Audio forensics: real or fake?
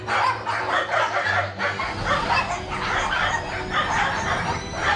real